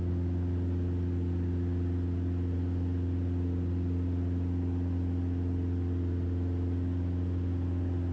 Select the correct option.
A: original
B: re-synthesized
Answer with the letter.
A